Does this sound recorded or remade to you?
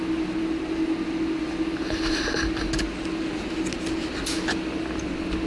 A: recorded